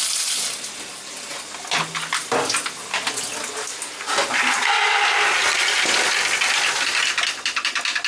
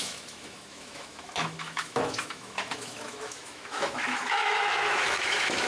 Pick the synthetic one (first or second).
second